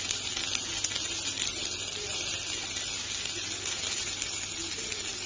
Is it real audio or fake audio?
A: real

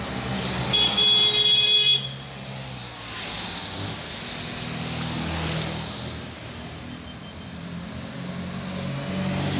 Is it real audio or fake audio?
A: real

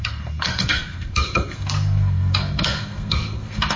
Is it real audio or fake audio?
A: fake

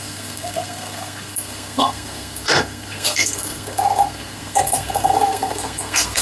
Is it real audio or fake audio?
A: fake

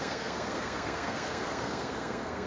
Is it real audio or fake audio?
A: fake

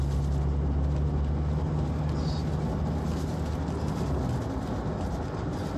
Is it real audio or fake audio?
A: real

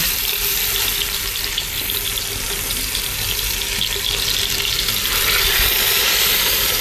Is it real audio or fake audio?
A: real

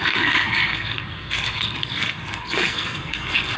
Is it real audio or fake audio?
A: fake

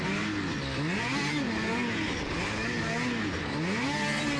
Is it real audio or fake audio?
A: real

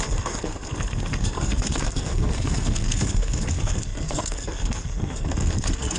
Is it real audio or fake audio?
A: fake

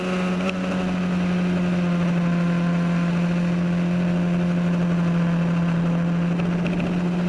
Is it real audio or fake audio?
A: real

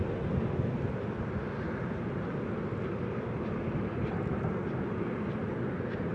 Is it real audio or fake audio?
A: real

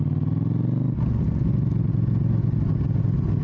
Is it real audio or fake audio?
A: real